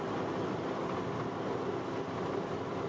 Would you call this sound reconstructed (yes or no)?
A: no